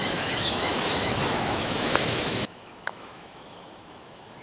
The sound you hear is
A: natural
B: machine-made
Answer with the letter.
B